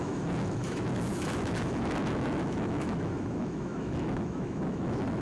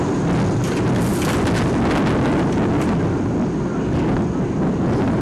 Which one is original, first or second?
second